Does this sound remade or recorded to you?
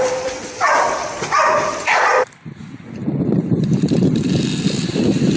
remade